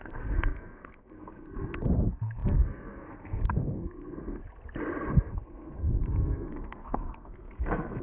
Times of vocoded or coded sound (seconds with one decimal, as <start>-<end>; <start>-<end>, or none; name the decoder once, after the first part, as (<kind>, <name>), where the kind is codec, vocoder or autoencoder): 0.0-4.4 (codec, SNAC); 5.1-8.0